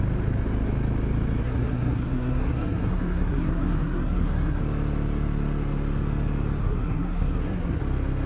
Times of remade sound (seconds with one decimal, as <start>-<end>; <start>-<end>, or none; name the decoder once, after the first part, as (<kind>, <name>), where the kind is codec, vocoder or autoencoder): 1.4-4.6 (codec, SNAC); 6.6-7.8